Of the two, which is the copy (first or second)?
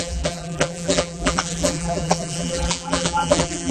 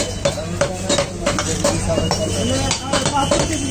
first